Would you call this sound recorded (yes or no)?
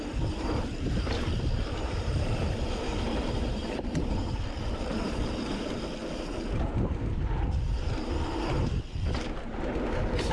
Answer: no